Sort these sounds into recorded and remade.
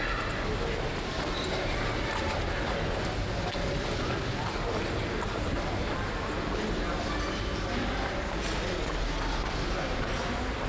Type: recorded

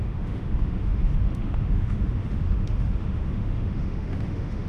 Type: remade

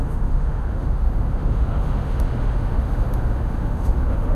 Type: remade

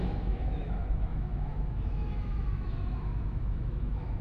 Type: remade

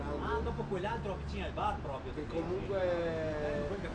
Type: recorded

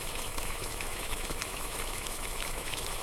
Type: remade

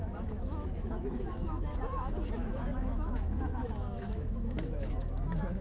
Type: remade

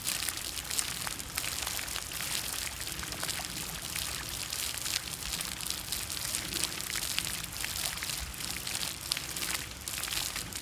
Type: recorded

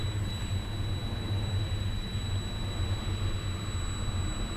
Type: recorded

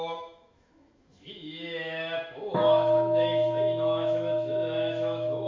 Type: remade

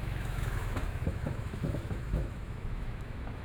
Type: remade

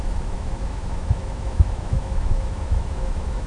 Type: remade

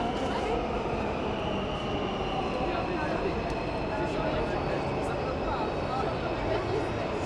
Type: recorded